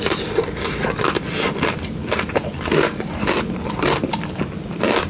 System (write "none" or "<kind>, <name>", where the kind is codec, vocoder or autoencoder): none